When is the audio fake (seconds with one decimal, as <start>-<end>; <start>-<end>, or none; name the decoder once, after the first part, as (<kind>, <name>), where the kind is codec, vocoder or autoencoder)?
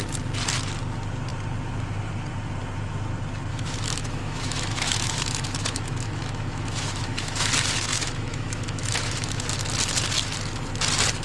3.5-7.5 (autoencoder, DAC-VAE); 7.9-9.4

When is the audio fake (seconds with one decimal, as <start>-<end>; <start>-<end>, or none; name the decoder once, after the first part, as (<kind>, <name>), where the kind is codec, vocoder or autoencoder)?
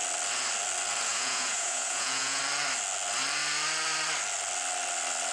1.1-2.4 (vocoder, Vocos)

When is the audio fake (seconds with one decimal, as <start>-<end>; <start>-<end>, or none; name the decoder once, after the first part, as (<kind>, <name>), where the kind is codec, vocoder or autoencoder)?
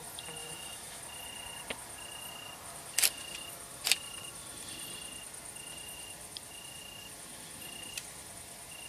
0.4-1.0 (autoencoder, DAC-VAE)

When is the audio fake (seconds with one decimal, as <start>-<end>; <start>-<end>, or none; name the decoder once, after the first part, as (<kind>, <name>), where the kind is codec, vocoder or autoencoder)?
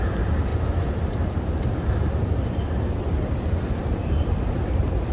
0.5-2.3 (vocoder, BigVGAN v2); 3.8-5.1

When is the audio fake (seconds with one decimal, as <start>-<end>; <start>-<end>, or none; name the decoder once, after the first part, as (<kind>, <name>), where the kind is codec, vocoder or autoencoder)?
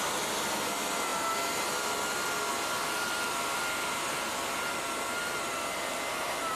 none